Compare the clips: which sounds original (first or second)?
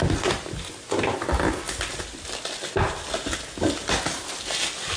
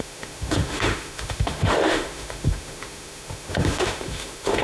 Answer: first